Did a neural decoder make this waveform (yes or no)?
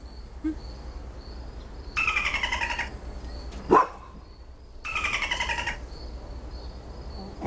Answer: no